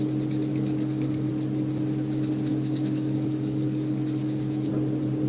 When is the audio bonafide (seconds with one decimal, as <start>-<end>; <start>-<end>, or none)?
0.0-0.5; 1.3-2.5; 4.7-5.3